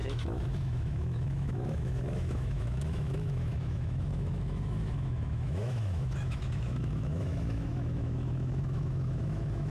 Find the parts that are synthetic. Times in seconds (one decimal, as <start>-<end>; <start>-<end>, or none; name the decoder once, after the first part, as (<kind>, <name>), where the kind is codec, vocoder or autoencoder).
0.0-9.7 (autoencoder, DAC-VAE)